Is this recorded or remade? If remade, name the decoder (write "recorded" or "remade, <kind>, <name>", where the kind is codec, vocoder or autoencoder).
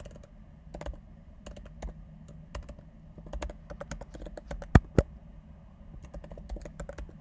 recorded